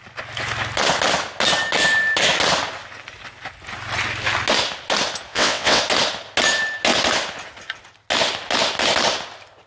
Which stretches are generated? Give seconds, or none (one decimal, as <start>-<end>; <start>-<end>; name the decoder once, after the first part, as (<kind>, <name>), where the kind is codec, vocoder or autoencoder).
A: 5.3-5.8 (vocoder, WaveNeXt)